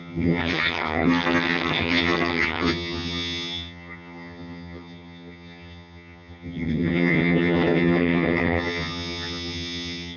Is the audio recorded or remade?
remade